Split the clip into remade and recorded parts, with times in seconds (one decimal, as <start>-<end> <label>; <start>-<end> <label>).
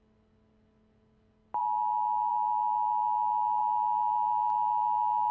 0.0-5.3 recorded